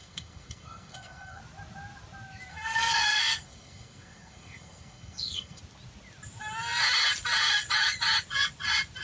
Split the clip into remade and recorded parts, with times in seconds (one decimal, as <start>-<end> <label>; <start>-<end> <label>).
0.0-1.4 remade; 1.4-2.5 recorded; 2.5-5.6 remade; 5.6-9.0 recorded